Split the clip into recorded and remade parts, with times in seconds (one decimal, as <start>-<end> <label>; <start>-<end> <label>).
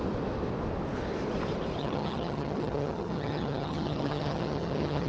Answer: 0.0-1.8 recorded; 1.8-5.1 remade